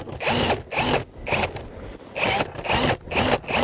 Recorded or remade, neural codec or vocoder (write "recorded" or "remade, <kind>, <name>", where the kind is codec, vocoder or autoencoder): recorded